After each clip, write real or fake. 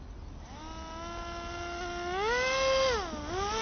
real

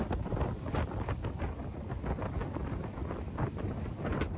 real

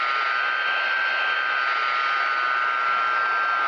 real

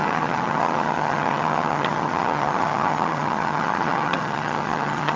fake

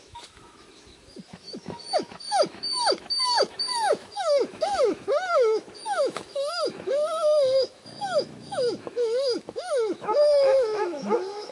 fake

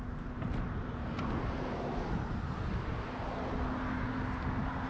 real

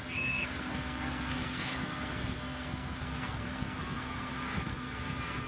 fake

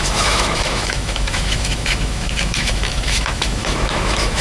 fake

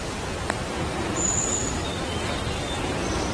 fake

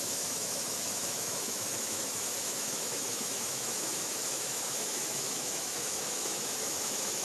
fake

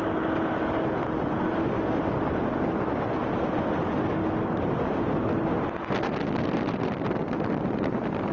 real